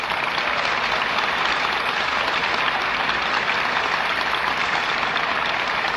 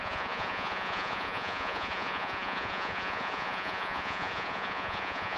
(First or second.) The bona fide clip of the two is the first